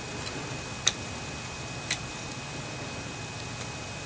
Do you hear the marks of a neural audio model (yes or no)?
no